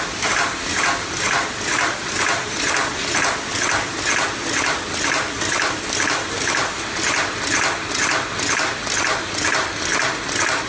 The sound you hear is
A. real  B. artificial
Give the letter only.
A